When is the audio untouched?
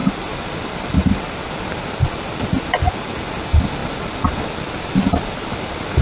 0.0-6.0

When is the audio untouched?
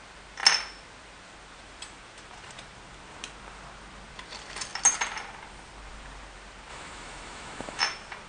0.0-6.7; 7.8-8.3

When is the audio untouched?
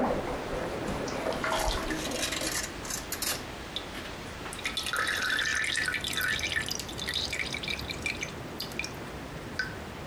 0.0-10.1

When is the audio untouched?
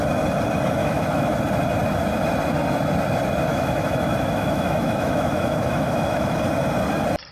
0.0-0.8; 1.4-3.5; 6.4-7.3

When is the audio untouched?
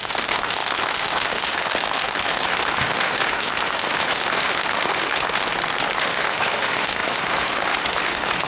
5.4-6.0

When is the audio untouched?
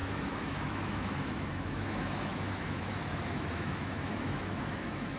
none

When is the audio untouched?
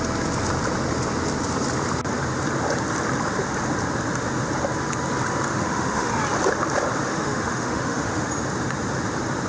0.0-5.5; 6.1-7.1; 8.3-9.5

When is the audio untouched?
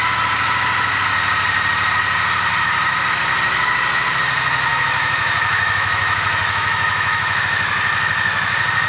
0.0-4.7; 7.4-8.9